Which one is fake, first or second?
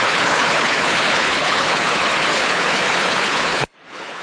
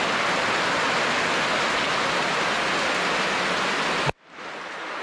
first